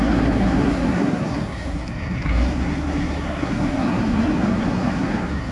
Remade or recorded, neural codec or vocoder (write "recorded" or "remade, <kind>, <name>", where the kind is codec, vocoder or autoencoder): remade, codec, SNAC